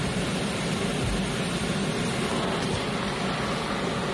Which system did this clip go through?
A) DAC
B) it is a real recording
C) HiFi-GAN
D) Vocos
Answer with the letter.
B